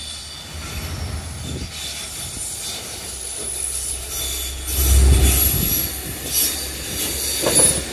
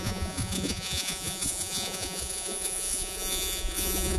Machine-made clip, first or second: second